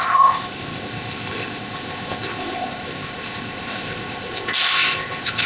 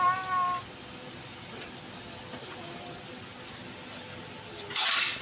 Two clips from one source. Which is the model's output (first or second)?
first